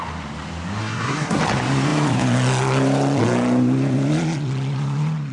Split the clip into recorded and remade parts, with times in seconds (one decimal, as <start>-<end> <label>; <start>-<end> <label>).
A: 0.0-0.8 recorded; 0.8-1.4 remade; 1.4-5.3 recorded